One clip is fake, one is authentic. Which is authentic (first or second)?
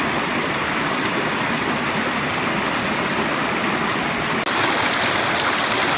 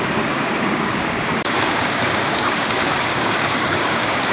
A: first